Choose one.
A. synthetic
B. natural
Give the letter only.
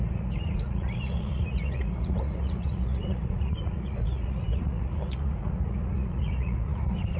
A